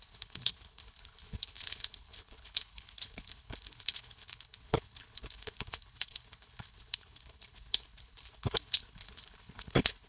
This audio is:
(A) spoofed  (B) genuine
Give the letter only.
A